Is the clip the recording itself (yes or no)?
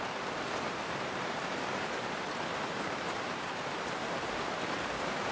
no